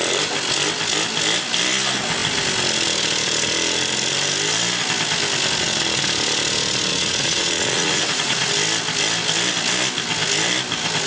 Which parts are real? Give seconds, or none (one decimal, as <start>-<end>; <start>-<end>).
0.0-6.9; 8.5-11.1